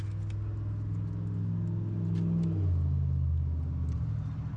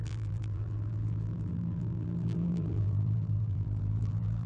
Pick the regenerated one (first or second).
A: second